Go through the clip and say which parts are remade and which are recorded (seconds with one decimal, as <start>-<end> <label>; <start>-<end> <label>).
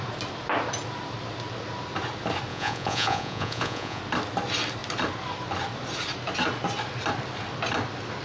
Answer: 0.0-2.5 recorded; 2.5-4.0 remade; 4.0-8.2 recorded